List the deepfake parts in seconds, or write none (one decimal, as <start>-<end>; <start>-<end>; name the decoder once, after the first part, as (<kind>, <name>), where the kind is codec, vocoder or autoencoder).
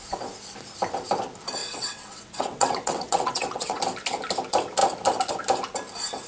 1.6-3.8 (vocoder, WaveNeXt)